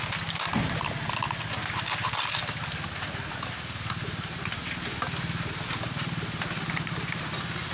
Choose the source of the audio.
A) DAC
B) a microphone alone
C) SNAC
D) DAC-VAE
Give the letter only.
B